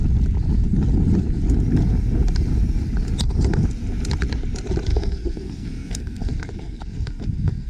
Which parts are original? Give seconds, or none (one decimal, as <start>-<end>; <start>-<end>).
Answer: 0.0-4.9